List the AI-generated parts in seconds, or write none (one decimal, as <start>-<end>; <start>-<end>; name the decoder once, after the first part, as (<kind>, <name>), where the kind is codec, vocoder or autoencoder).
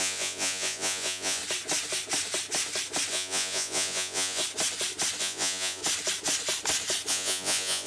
0.0-1.4 (vocoder, Vocos); 3.1-4.4; 5.2-5.8; 7.1-7.9